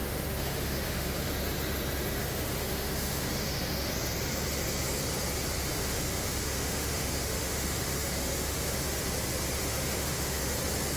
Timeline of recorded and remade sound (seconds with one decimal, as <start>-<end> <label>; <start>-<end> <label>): 0.0-1.3 remade; 1.3-2.2 recorded; 2.2-3.9 remade; 3.9-5.7 recorded; 5.7-9.0 remade; 9.0-9.6 recorded; 9.6-10.6 remade; 10.6-11.0 recorded